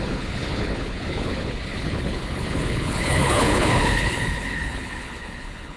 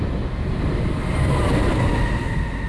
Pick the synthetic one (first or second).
first